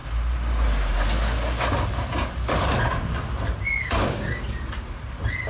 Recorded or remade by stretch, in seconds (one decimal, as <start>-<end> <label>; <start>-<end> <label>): 0.0-3.7 recorded; 3.7-4.4 remade; 4.4-5.5 recorded